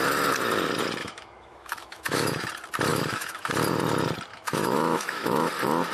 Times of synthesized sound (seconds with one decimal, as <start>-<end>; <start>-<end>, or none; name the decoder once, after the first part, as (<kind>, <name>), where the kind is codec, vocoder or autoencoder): 1.0-2.5 (autoencoder, DAC-VAE); 2.9-3.5; 4.3-5.5